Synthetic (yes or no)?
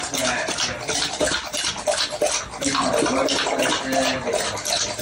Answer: no